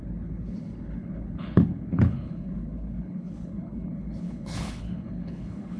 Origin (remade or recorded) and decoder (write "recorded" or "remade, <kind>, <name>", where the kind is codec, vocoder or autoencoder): remade, codec, HILCodec